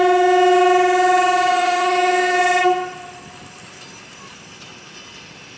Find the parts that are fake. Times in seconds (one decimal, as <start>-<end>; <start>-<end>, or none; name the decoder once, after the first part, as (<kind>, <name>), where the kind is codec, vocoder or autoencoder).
1.5-2.4 (autoencoder, DAC-VAE)